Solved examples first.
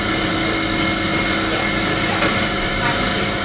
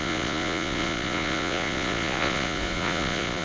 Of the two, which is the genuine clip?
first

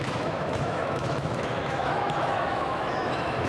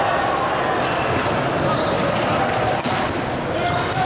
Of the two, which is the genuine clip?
second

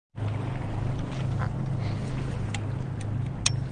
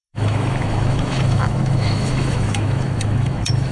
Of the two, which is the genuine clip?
first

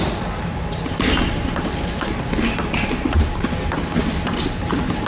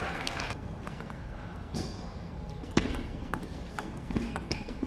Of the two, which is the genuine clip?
first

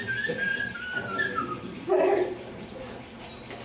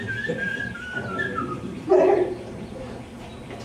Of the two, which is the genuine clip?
first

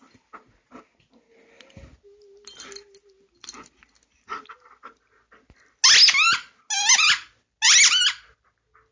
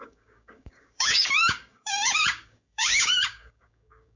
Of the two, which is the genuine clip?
first